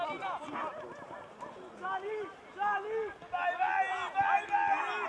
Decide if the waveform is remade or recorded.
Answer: recorded